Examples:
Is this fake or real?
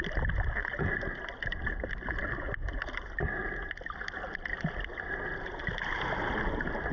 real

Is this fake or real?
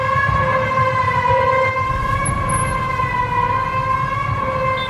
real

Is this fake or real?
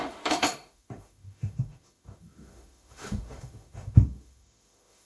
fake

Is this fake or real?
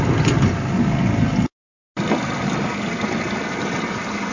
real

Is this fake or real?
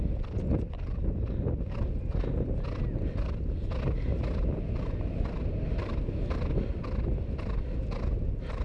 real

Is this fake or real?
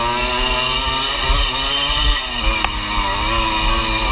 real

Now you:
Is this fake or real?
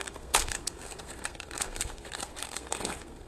fake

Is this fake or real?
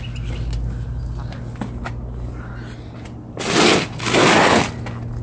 real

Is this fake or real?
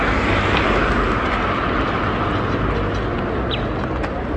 real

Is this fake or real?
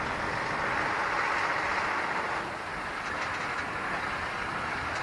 real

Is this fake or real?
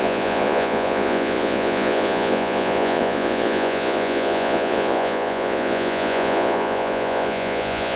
fake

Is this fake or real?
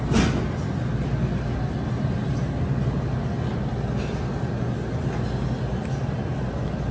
real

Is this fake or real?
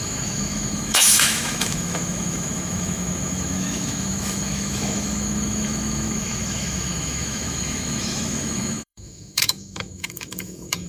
fake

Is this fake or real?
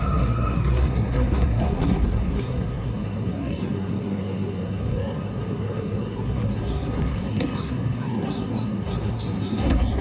fake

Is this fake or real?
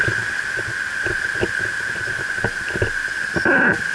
real